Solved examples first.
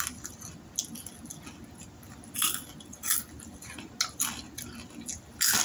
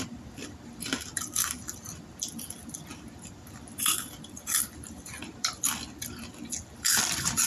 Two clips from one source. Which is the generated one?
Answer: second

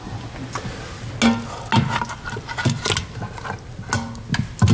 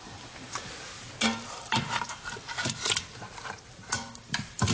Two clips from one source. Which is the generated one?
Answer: second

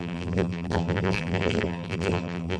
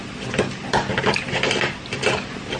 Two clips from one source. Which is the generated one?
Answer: first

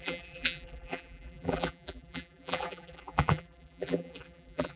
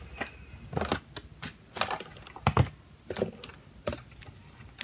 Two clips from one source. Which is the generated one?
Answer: first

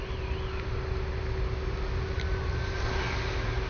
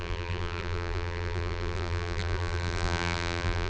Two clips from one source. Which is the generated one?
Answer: second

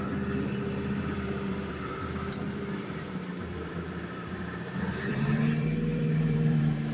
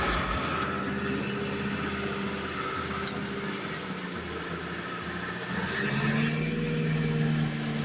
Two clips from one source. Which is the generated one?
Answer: first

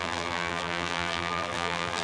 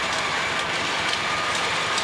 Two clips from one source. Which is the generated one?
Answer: first